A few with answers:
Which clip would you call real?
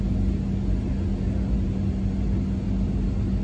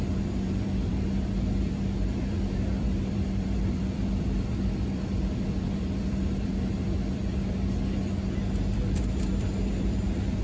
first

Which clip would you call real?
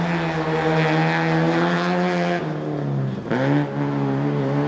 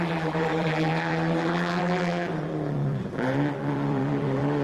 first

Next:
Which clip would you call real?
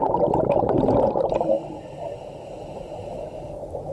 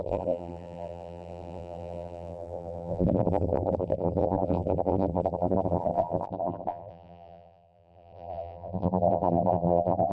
first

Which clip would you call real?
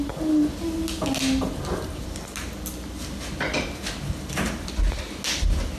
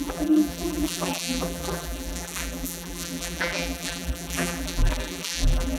first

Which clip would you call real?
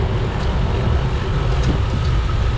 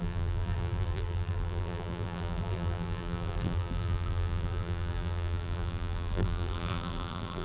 first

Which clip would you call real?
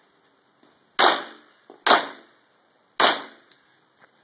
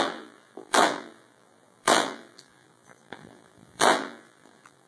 first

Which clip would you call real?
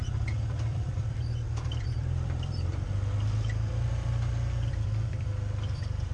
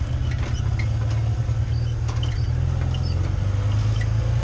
second